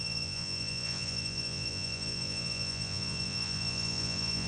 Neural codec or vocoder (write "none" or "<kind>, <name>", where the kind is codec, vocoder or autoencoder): vocoder, Vocos